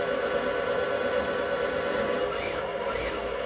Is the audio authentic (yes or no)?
yes